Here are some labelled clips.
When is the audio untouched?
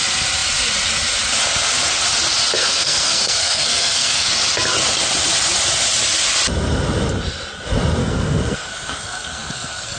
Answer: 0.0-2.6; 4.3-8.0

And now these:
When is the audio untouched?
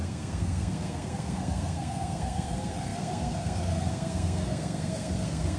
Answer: none